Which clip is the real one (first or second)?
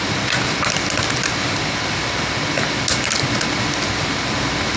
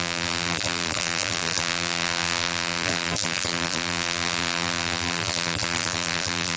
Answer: first